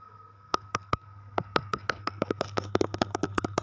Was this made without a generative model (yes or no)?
no